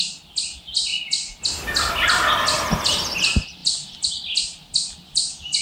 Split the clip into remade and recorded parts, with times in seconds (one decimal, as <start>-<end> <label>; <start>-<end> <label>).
0.0-3.6 recorded; 3.6-4.1 remade; 4.1-5.6 recorded